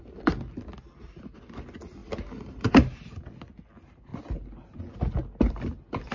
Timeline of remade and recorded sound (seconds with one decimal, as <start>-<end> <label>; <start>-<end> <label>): 0.0-2.0 recorded; 2.0-2.7 remade; 2.7-5.2 recorded; 5.2-6.1 remade